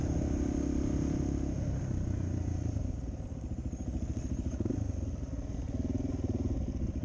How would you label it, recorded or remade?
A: recorded